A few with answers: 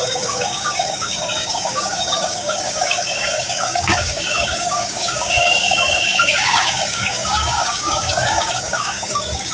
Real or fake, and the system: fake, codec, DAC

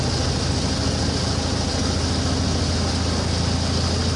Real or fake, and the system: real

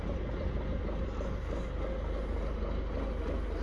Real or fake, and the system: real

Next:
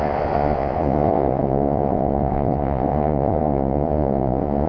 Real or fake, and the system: fake, vocoder, Vocos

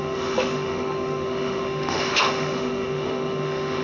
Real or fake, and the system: fake, autoencoder, DAC-VAE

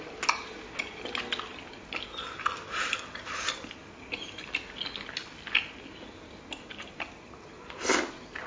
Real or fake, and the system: real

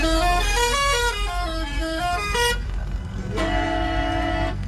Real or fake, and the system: fake, codec, SNAC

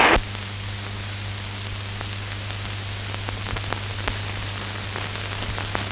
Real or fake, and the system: real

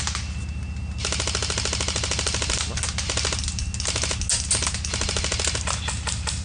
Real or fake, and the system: real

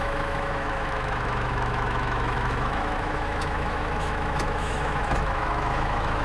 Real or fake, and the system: fake, autoencoder, DAC-VAE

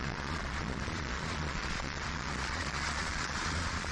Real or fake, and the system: fake, vocoder, Vocos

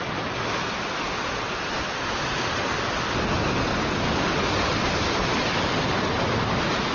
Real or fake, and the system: real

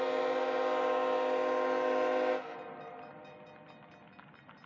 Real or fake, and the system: real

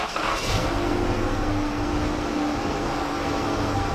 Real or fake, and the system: fake, codec, SNAC